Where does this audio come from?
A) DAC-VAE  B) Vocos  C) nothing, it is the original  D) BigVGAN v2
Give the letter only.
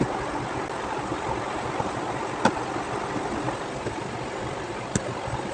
D